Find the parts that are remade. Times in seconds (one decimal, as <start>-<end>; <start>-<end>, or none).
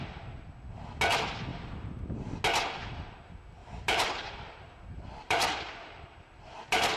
1.5-2.4; 3.6-7.0